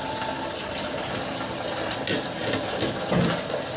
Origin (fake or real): real